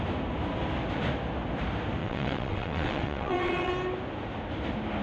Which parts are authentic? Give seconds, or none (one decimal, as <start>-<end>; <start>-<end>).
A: 0.0-2.0; 3.7-5.0